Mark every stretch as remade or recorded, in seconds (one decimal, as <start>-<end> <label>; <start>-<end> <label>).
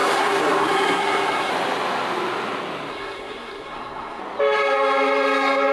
0.0-1.5 remade; 1.5-2.9 recorded; 2.9-4.2 remade; 4.2-5.7 recorded